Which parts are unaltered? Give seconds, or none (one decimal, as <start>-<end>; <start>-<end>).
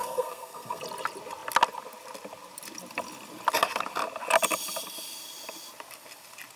0.8-6.6